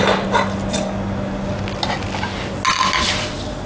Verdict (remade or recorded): recorded